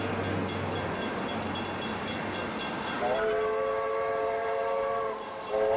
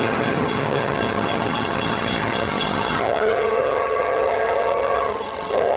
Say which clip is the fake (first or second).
second